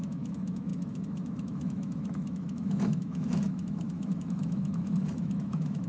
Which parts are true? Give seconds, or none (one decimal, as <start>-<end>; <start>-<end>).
none